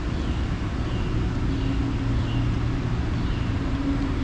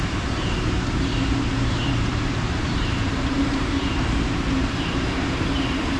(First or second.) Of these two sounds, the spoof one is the second